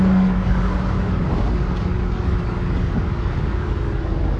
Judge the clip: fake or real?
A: fake